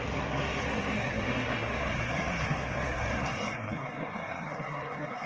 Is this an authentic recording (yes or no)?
no